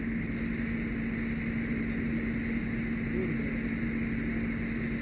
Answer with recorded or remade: recorded